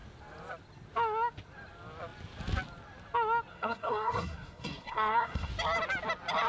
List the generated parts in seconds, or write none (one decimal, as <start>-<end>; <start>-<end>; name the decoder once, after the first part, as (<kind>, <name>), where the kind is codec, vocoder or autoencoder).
3.5-5.5 (codec, SNAC)